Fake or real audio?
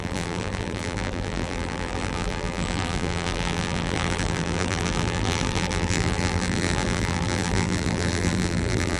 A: fake